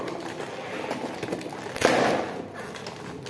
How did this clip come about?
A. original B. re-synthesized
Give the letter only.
A